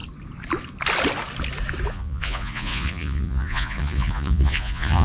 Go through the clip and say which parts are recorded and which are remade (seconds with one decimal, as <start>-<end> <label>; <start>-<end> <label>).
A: 0.0-1.9 recorded; 1.9-5.0 remade